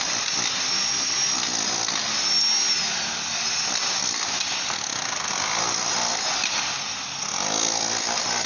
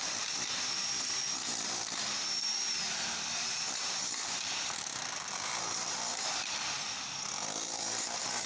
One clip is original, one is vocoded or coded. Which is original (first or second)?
first